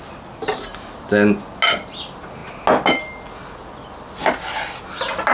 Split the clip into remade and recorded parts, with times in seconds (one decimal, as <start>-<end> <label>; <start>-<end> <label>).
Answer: 0.0-5.3 recorded